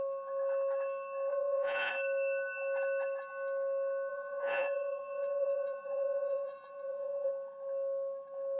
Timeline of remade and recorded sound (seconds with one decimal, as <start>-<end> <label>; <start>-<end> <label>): 0.0-1.3 recorded; 1.3-1.9 remade; 1.9-4.1 recorded; 4.1-7.3 remade; 7.3-8.6 recorded